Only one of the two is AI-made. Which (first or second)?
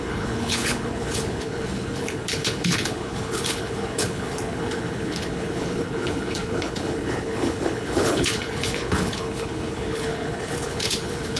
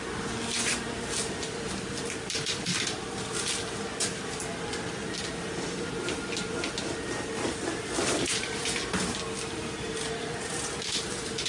first